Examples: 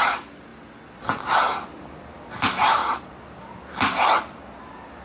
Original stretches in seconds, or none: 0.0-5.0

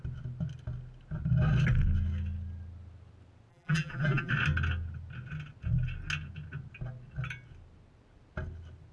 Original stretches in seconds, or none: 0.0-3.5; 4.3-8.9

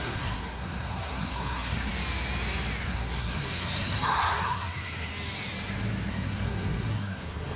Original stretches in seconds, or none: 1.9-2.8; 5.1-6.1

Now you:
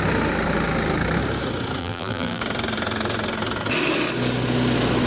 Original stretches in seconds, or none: 0.0-1.8; 2.4-5.1

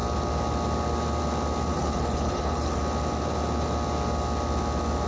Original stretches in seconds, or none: 0.0-1.7; 2.8-5.1